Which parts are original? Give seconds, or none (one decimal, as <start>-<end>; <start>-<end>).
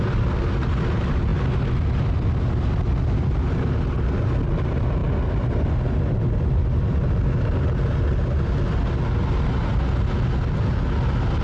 0.0-11.4